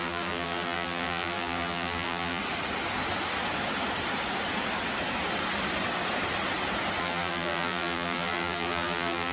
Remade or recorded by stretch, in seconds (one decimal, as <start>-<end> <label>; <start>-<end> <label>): 0.0-2.4 remade; 2.4-7.0 recorded; 7.0-9.3 remade